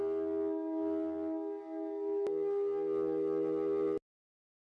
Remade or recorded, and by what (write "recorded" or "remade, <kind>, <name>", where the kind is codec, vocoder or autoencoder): recorded